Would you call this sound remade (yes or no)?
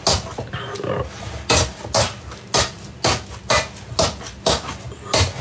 no